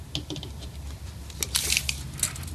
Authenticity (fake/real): real